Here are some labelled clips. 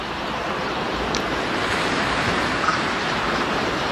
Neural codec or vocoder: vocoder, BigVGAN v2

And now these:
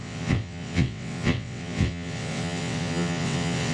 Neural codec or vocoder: vocoder, WaveNeXt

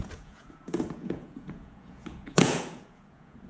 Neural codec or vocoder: vocoder, Vocos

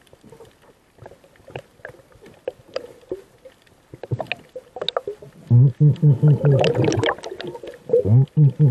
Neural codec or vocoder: none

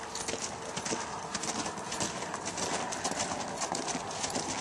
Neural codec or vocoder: none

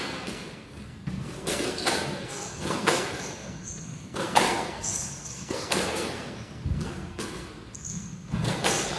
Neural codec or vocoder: codec, SNAC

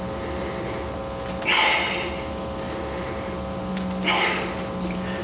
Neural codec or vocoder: none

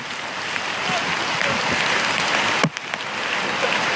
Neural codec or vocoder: none